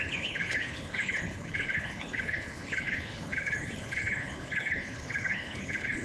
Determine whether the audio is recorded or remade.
remade